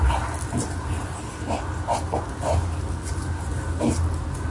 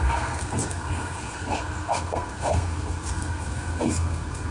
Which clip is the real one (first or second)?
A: first